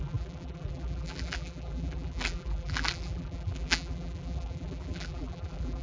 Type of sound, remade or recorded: remade